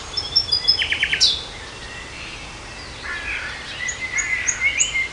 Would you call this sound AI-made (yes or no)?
no